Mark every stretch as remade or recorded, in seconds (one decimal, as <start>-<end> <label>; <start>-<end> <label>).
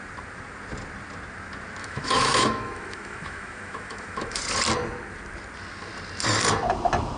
0.0-1.8 recorded; 1.8-4.4 remade; 4.4-7.2 recorded